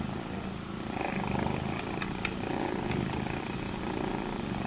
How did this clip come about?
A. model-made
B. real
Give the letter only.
B